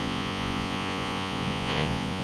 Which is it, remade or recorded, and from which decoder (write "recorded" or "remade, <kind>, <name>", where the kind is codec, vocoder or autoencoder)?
remade, vocoder, Vocos